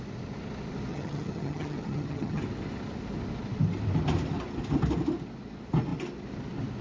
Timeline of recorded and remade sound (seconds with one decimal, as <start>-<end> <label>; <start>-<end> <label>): 0.0-0.9 recorded; 0.9-2.4 remade; 2.4-6.8 recorded